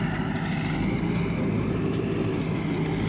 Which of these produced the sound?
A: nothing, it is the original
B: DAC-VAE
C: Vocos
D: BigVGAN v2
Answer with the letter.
A